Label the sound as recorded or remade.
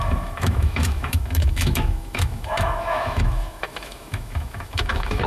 remade